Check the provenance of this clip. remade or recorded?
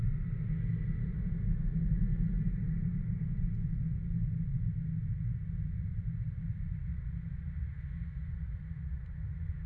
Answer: recorded